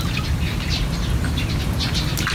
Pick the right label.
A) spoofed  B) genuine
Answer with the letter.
B